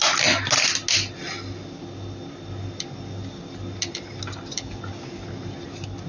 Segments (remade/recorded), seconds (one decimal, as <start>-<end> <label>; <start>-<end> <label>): 0.0-6.1 recorded